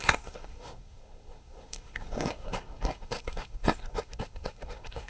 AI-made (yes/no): yes